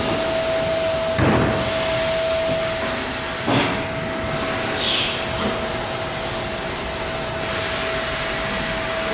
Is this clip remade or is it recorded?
recorded